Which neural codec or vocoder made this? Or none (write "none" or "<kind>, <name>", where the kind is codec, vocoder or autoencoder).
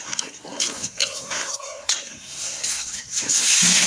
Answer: codec, SNAC